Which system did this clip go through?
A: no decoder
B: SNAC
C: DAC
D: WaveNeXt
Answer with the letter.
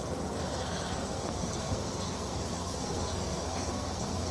B